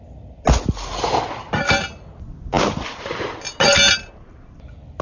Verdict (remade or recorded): recorded